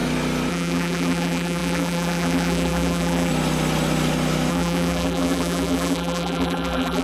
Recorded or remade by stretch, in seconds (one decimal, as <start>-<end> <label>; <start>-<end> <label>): 0.0-0.5 recorded; 0.5-3.3 remade; 3.3-4.5 recorded; 4.5-7.0 remade